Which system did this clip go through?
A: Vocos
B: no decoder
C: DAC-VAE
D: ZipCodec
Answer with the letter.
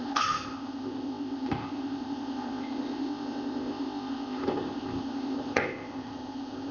D